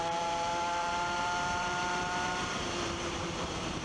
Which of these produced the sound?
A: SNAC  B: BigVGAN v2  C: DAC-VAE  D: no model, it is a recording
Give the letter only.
B